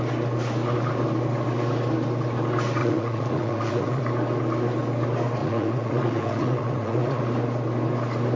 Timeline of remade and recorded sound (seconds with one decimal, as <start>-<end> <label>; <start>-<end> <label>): 0.0-2.8 recorded; 2.8-4.0 remade; 4.0-5.4 recorded; 5.4-7.2 remade; 7.2-8.4 recorded